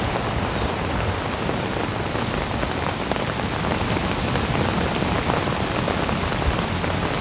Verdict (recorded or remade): recorded